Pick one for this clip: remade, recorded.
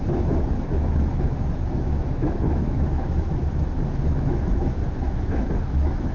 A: remade